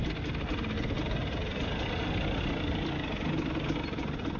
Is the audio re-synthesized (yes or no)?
no